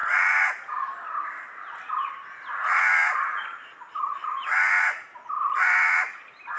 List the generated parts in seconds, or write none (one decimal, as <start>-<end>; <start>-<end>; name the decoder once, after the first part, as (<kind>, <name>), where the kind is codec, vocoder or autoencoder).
none

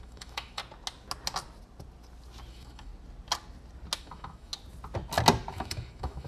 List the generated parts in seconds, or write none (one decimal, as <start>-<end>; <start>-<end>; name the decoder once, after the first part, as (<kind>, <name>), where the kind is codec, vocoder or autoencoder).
0.0-0.6 (autoencoder, DAC-VAE); 2.5-2.9; 4.0-4.5; 5.5-6.3

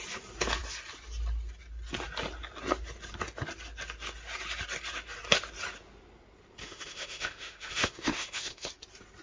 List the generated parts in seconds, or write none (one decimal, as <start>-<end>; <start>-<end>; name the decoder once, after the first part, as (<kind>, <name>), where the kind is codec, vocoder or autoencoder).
6.6-8.7 (autoencoder, DAC-VAE)